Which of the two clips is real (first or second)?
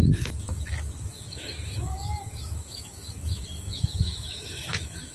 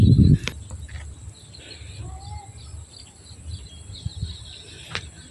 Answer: second